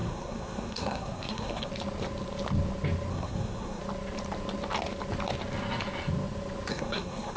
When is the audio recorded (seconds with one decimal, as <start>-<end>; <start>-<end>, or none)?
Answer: 1.7-3.1; 3.8-6.7